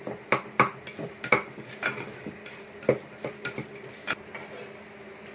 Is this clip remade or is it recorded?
recorded